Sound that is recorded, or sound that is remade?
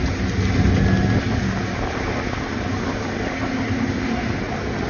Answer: recorded